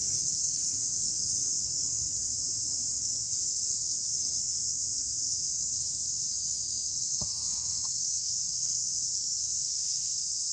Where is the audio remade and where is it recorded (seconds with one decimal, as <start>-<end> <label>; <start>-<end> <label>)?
0.0-2.3 remade; 2.3-2.9 recorded; 2.9-10.5 remade